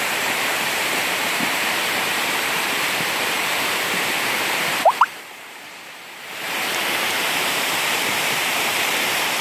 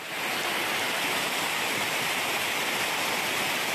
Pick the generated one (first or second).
first